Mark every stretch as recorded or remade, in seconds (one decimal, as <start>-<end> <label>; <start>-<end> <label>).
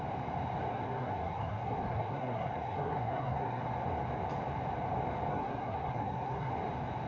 0.0-0.7 recorded; 0.7-3.6 remade; 3.6-5.3 recorded; 5.3-6.5 remade; 6.5-7.1 recorded